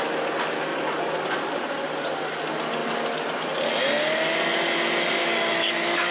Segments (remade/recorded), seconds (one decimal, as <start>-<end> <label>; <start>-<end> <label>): 0.0-5.2 recorded; 5.2-6.1 remade